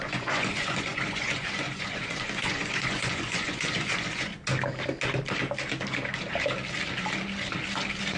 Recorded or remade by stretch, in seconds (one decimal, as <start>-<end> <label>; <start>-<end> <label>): 0.0-4.3 remade; 4.3-8.2 recorded